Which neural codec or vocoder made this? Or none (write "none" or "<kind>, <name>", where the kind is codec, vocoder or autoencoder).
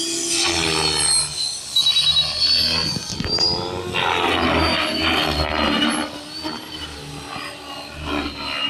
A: none